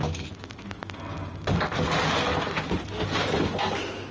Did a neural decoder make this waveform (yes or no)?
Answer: no